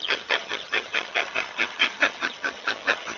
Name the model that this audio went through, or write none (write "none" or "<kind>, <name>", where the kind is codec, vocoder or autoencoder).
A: vocoder, HiFi-GAN